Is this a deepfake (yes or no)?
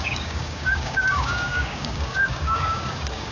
yes